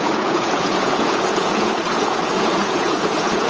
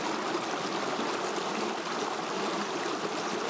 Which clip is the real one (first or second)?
second